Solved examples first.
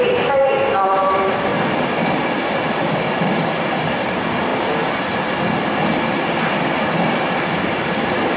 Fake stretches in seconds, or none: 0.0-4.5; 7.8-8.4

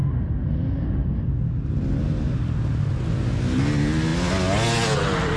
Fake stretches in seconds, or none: none

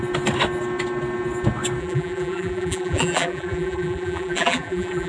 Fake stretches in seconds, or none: 1.8-5.1